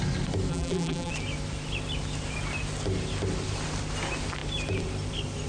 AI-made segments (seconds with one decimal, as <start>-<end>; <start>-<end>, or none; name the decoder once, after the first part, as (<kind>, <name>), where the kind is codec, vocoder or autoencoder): 0.5-1.1 (vocoder, BigVGAN v2)